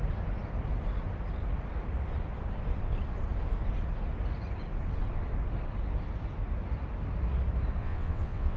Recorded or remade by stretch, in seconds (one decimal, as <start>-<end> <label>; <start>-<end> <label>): 0.0-7.8 recorded; 7.8-8.6 remade